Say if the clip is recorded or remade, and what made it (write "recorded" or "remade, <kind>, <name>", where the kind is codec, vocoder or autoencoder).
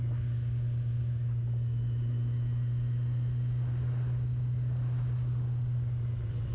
recorded